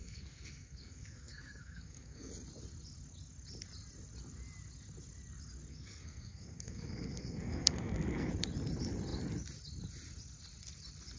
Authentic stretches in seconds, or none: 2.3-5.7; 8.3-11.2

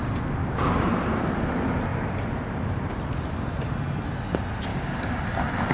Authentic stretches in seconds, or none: 0.0-0.4; 0.9-4.7; 5.2-5.7